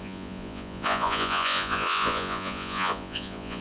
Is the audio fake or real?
fake